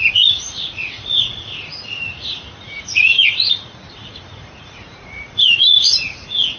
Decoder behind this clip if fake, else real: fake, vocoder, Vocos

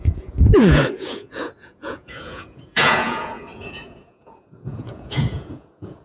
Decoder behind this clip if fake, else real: fake, vocoder, Vocos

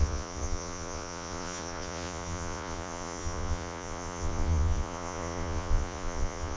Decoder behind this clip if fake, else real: fake, vocoder, Vocos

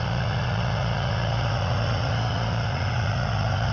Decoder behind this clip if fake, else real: fake, vocoder, Vocos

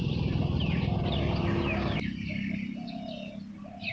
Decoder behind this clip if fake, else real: real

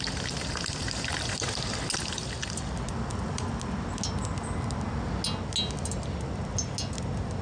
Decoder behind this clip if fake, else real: real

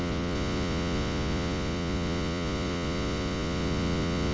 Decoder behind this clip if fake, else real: fake, vocoder, Vocos